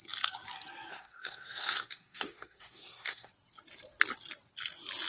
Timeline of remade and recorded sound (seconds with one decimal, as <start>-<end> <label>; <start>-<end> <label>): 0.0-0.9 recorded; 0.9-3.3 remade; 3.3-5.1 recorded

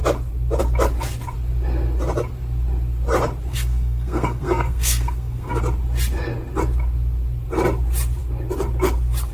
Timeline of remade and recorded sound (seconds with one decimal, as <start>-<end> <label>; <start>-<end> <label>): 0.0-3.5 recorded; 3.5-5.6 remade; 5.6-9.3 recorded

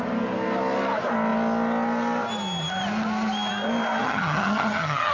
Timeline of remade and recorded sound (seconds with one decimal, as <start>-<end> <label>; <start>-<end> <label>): 0.0-4.0 recorded; 4.0-5.1 remade

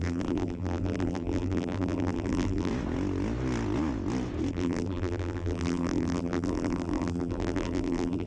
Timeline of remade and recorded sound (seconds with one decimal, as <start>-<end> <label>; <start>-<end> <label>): 0.0-2.7 remade; 2.7-4.5 recorded; 4.5-8.3 remade